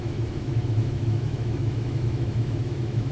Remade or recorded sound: remade